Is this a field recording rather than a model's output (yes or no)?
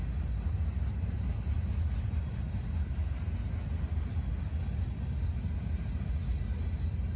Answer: yes